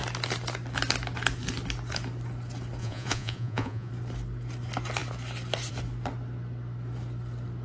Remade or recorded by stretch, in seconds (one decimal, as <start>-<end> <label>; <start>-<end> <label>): 0.0-2.8 recorded; 2.8-3.9 remade; 3.9-7.6 recorded